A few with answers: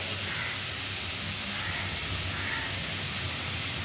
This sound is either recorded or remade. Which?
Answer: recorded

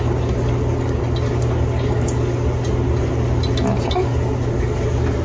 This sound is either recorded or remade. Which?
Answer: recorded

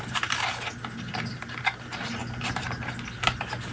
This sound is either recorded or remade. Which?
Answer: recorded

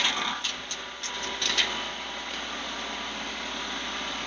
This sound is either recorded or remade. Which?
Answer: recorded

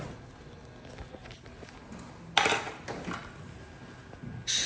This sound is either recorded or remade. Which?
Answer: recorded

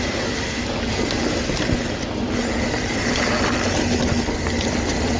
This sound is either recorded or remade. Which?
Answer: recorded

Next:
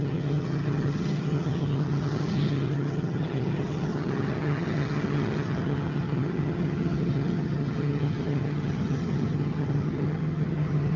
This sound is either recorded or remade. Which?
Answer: remade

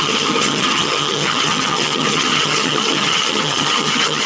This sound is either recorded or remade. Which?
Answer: remade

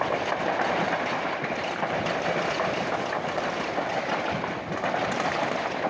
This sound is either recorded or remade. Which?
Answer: recorded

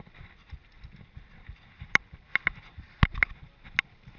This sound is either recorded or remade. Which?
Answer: recorded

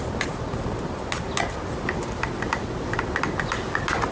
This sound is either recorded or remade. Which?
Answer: recorded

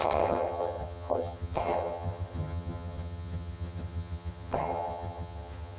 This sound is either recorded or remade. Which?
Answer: remade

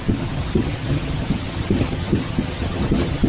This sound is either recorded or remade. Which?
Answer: remade